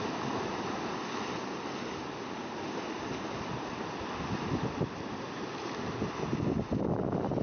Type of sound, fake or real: real